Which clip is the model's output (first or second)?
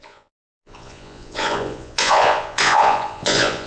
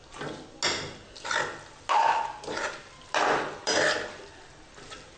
first